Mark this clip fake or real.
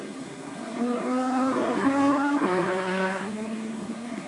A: fake